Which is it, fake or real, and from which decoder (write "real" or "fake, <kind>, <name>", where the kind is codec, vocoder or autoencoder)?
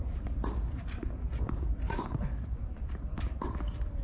real